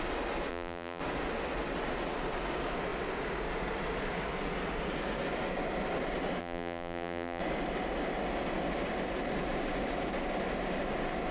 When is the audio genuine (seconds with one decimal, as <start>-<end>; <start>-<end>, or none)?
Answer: 0.0-0.5; 1.0-6.4; 7.4-11.3